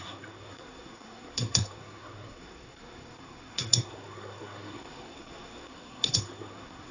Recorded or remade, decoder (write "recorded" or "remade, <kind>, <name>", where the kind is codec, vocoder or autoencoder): remade, codec, SNAC